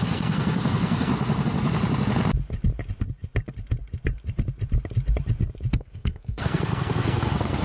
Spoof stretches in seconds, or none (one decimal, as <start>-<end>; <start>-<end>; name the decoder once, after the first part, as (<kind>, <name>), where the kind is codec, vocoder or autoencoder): 0.0-1.1 (codec, SNAC); 5.7-7.6